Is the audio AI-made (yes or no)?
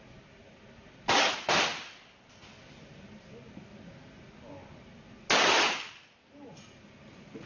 no